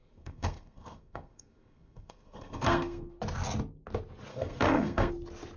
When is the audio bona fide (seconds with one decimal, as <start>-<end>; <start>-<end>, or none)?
3.2-4.3; 5.1-5.6